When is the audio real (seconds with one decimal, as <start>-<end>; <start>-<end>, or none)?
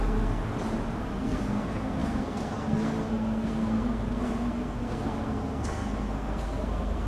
0.4-1.0